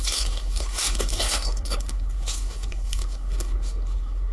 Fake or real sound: fake